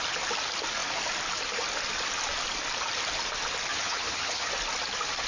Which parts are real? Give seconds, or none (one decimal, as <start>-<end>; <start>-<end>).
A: 0.0-3.7; 4.5-5.3

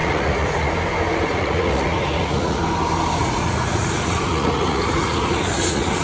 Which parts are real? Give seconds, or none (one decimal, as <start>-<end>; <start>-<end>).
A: 0.7-1.3; 2.6-3.2

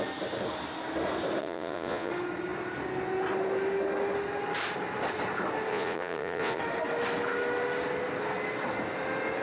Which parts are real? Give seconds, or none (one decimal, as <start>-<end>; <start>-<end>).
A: 0.0-1.4; 2.1-5.7; 6.6-9.4

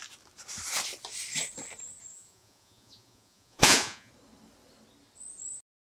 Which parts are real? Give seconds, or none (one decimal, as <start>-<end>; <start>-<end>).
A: 0.0-2.1; 4.1-6.0

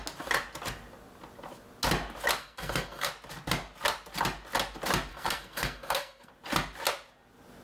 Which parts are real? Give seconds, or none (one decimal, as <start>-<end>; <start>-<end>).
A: 0.0-2.4; 3.1-5.1; 6.3-7.6

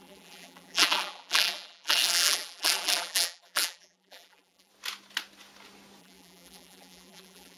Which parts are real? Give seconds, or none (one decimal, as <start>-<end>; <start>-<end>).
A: 4.7-6.0

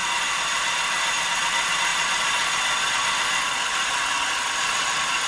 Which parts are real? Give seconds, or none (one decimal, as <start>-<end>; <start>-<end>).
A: 1.2-5.3

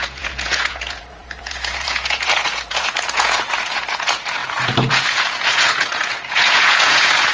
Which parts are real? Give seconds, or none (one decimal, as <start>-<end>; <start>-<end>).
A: none